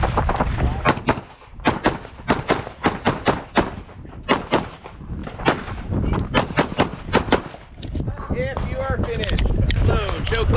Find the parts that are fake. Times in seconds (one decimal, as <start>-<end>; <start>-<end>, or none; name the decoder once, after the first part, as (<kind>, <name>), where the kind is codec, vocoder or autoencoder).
none

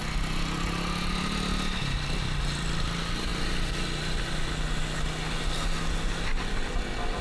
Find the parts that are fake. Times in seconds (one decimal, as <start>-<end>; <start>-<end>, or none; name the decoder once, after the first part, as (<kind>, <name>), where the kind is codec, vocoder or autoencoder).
none

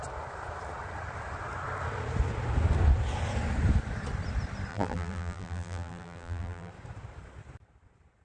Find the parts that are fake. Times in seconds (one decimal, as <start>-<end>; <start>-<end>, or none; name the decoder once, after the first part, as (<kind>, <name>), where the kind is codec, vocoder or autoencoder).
4.7-6.7 (vocoder, BigVGAN v2)

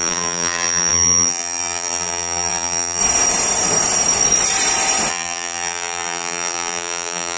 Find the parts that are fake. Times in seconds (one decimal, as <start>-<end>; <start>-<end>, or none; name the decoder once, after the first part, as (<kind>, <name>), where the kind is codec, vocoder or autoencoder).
0.0-3.0 (vocoder, BigVGAN v2); 5.1-7.4

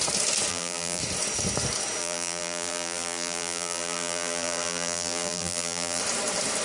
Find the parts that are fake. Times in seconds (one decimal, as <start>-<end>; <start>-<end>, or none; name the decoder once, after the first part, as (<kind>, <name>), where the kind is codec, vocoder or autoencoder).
0.5-1.0 (vocoder, BigVGAN v2); 2.0-6.0